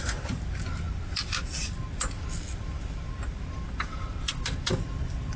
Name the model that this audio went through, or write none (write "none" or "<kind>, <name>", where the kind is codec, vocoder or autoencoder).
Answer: none